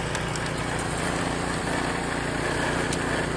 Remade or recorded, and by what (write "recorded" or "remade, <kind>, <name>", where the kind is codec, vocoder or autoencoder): recorded